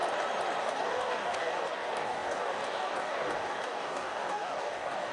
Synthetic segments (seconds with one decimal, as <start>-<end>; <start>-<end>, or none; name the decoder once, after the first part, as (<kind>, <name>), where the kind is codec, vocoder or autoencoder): 0.6-5.1 (codec, DAC)